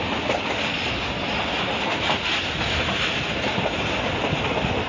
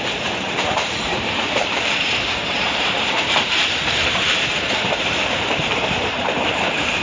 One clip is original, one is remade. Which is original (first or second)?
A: first